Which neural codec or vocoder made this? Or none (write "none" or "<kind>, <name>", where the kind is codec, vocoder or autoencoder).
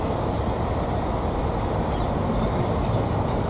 none